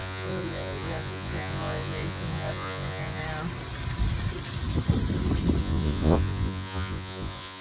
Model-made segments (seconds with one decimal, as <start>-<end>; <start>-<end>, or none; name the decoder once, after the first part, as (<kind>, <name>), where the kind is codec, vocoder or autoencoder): 0.0-3.2 (vocoder, Vocos); 5.6-7.6